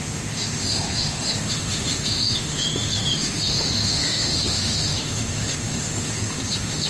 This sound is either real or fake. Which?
fake